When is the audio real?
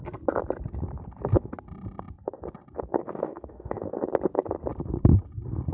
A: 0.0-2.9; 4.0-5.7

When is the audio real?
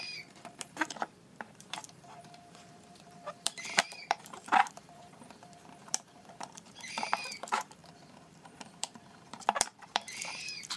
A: none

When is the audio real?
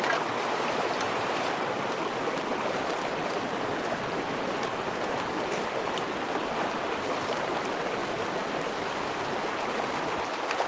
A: 0.0-10.7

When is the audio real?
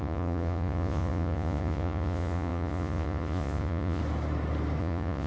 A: 4.0-4.8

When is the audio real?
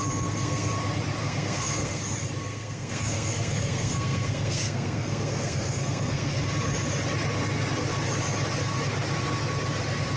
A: 0.7-1.2; 2.0-2.4; 6.3-10.2